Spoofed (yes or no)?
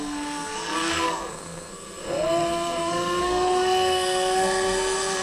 yes